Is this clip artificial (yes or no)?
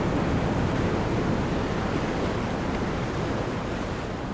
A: no